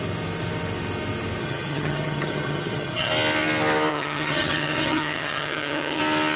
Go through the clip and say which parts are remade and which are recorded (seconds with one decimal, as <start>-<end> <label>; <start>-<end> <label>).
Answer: 0.0-1.4 recorded; 1.4-3.1 remade; 3.1-3.9 recorded; 3.9-6.0 remade; 6.0-6.4 recorded